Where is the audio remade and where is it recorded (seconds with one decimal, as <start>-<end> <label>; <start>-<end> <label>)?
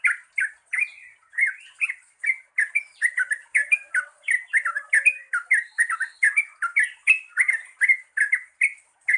0.0-9.2 recorded